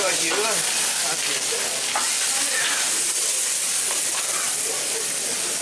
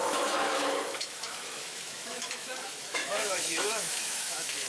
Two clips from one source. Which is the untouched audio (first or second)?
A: first